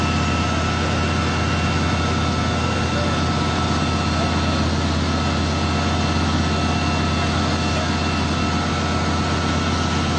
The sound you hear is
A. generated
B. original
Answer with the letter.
B